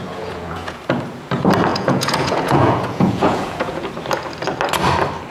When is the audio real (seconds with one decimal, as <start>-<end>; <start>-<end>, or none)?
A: 0.8-1.7; 3.9-5.3